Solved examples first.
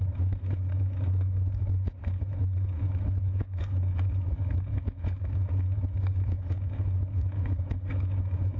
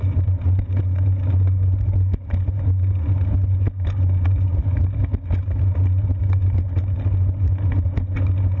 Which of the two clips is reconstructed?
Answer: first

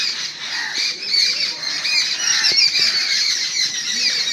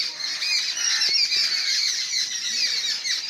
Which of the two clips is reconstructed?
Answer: first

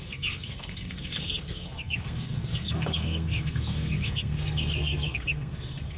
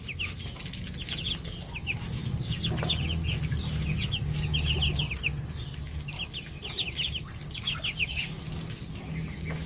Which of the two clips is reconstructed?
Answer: first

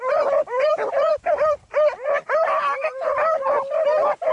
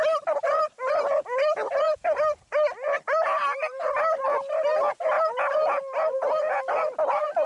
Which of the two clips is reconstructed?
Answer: first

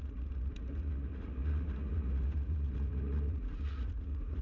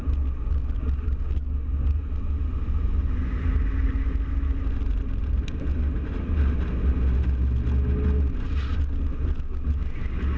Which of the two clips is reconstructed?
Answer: first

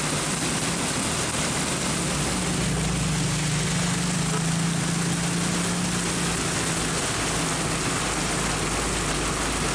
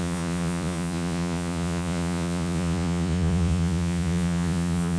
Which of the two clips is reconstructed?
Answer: second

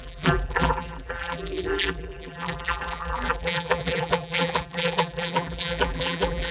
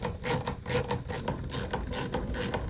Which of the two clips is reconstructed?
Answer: first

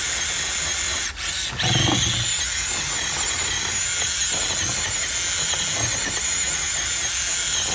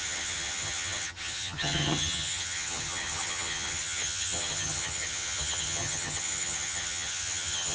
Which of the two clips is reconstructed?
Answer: second